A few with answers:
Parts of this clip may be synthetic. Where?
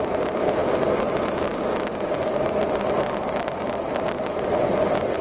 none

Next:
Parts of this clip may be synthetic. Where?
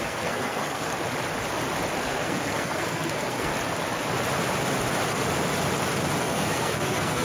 0.0-0.9 (codec, SNAC); 2.0-3.5; 6.2-7.2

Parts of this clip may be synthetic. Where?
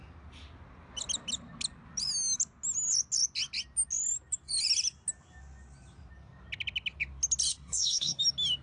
7.5-8.2 (codec, SNAC)